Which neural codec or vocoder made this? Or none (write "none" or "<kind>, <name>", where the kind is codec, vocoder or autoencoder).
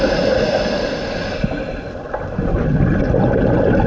none